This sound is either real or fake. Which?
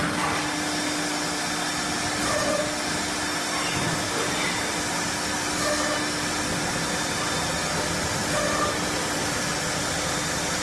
real